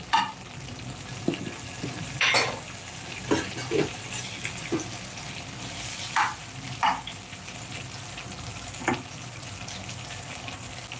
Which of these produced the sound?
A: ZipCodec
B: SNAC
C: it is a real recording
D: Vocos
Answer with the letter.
C